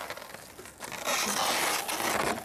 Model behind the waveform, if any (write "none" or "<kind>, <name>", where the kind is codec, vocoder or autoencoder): none